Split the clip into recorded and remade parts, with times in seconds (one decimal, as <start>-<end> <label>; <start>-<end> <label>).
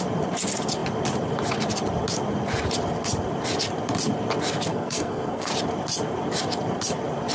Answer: 0.0-4.7 recorded; 4.7-5.5 remade; 5.5-7.3 recorded